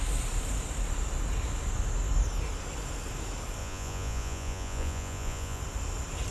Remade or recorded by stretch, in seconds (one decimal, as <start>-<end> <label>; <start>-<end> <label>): 0.0-3.6 recorded; 3.6-5.6 remade; 5.6-6.3 recorded